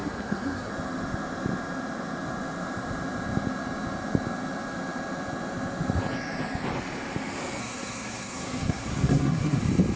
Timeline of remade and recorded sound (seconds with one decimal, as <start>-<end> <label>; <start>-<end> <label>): 0.0-0.7 remade; 0.7-7.6 recorded; 7.6-9.6 remade; 9.6-10.0 recorded